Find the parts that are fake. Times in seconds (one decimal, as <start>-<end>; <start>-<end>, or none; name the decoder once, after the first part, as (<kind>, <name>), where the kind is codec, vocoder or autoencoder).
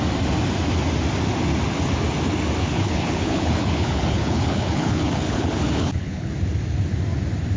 2.6-6.3 (codec, HILCodec)